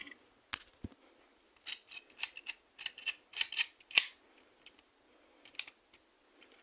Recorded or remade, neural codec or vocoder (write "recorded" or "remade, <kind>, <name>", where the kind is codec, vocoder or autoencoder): recorded